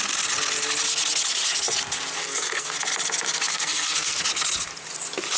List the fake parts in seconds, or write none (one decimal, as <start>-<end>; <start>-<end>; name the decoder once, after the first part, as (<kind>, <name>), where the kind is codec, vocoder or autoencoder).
2.2-2.7 (codec, SNAC); 3.5-4.2